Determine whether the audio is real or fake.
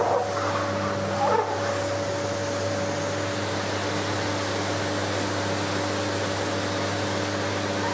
real